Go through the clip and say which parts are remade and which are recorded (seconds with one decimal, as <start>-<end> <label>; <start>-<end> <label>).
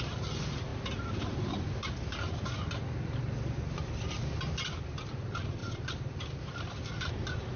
0.0-5.6 recorded; 5.6-7.1 remade; 7.1-7.6 recorded